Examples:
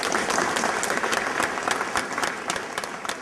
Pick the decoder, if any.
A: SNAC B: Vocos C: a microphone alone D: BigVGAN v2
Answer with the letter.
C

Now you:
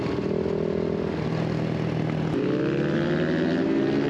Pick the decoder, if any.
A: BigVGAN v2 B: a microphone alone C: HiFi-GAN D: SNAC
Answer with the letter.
B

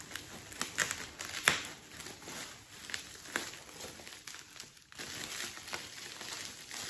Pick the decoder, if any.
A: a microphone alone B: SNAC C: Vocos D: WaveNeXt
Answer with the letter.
A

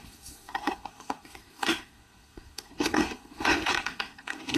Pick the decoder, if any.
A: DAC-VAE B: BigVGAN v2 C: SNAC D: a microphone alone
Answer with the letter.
C